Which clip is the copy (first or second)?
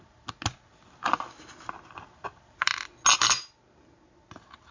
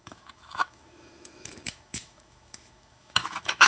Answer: second